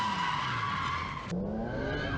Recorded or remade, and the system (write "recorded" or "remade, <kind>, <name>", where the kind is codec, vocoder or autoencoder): recorded